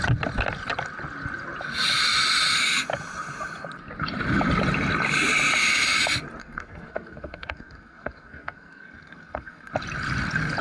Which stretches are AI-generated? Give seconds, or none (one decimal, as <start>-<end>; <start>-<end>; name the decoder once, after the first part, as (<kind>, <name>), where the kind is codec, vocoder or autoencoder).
6.4-9.7 (codec, SNAC)